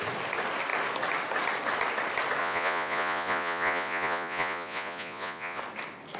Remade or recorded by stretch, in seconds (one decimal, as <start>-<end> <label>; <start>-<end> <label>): 0.0-2.4 recorded; 2.4-5.6 remade; 5.6-6.2 recorded